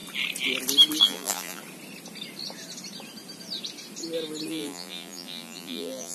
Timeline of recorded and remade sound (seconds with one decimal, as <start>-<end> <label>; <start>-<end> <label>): 0.0-1.0 recorded; 1.0-1.6 remade; 1.6-4.5 recorded; 4.5-6.1 remade